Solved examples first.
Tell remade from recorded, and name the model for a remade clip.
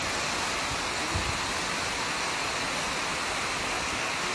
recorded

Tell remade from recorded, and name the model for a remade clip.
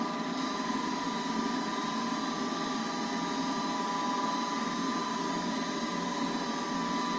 recorded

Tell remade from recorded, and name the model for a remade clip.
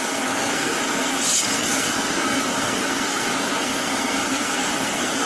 remade, codec, SNAC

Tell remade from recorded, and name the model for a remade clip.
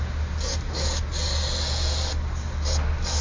recorded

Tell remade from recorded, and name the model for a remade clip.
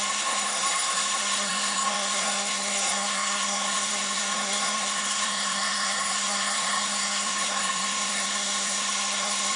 remade, codec, SNAC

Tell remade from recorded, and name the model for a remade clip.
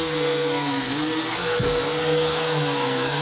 remade, codec, SNAC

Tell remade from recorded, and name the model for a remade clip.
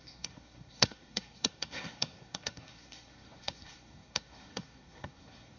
remade, codec, SNAC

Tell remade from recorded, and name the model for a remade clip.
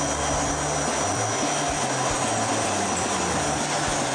recorded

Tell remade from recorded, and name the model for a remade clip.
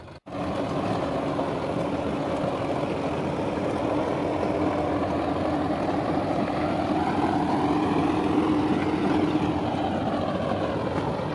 recorded